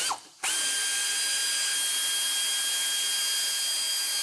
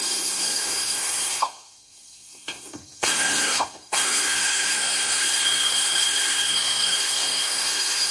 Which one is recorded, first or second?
first